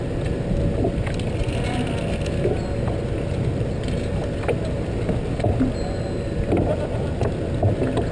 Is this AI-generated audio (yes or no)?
no